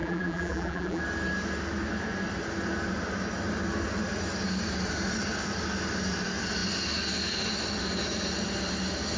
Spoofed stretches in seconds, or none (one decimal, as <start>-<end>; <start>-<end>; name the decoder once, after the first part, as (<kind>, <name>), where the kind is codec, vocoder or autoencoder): 0.0-1.0 (vocoder, BigVGAN v2)